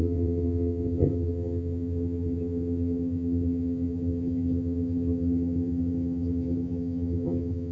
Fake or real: fake